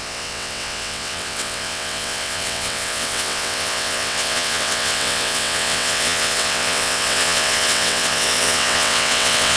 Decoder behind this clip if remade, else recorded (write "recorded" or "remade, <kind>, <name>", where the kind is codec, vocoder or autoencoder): remade, vocoder, WaveNeXt